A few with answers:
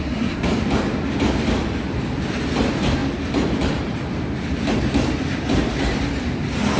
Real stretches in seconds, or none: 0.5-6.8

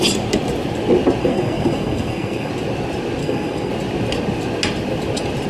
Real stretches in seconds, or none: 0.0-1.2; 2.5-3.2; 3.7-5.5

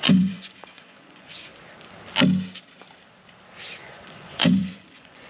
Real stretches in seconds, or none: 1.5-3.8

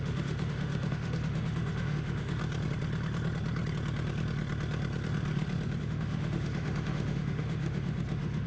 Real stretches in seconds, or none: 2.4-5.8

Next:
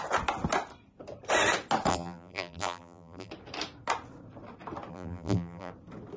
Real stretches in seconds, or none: 0.0-1.9; 3.3-4.9; 5.7-6.2